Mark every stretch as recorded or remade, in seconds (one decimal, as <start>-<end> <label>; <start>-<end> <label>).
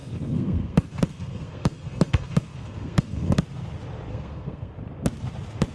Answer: 0.0-3.4 remade; 3.4-4.1 recorded; 4.1-4.7 remade; 4.7-5.7 recorded